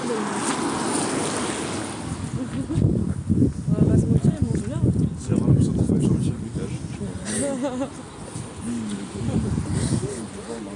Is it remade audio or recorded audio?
recorded